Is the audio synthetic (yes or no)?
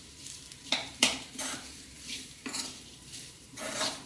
yes